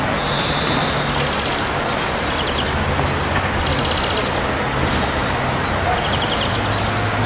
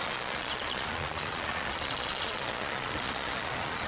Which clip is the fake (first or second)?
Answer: second